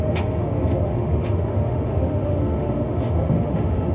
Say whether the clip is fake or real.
fake